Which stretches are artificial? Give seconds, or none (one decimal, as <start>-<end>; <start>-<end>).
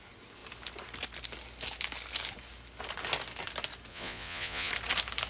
3.9-4.7